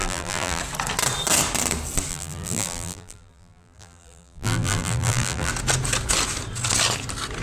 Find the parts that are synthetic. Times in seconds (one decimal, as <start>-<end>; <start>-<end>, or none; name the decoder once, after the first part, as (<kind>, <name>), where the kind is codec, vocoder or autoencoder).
0.0-0.6 (vocoder, BigVGAN v2); 2.1-5.5